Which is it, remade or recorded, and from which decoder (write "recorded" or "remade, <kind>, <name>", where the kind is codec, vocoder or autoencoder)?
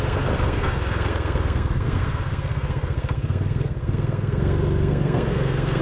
remade, codec, SNAC